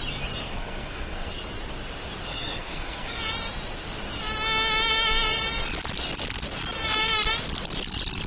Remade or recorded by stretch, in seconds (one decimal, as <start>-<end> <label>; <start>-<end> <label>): 0.0-0.4 recorded; 0.4-1.3 remade; 1.3-2.3 recorded; 2.3-3.2 remade; 3.2-8.3 recorded